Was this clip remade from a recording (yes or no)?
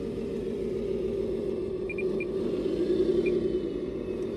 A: no